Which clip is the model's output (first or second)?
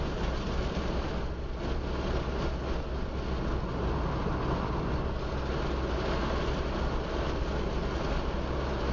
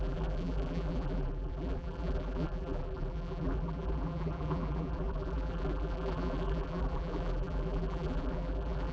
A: second